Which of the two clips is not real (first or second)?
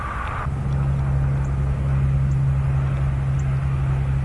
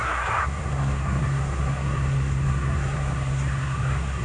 second